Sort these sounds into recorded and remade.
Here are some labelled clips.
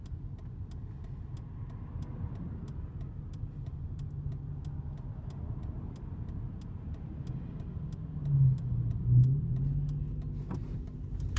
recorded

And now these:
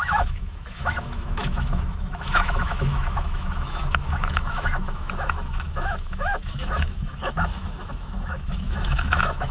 remade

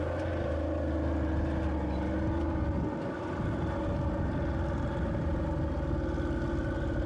recorded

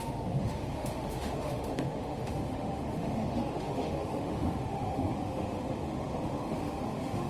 remade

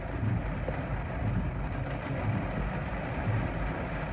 recorded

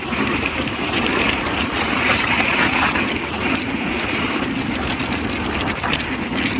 recorded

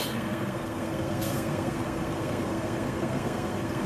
remade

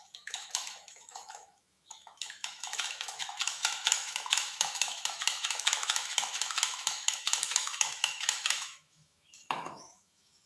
remade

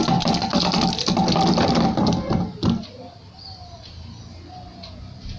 recorded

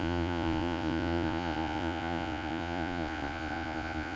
remade